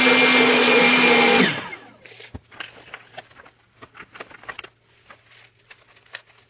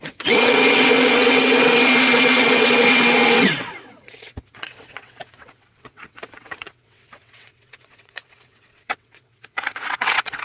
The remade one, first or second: second